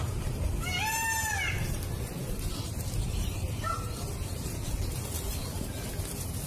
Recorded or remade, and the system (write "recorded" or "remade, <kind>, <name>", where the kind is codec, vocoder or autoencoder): recorded